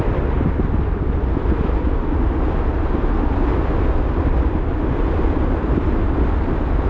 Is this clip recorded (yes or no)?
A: yes